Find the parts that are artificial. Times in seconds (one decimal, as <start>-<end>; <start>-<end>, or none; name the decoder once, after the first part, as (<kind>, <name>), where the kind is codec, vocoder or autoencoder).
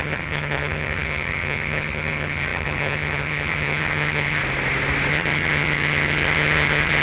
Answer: 0.0-4.4 (vocoder, HiFi-GAN); 5.1-7.0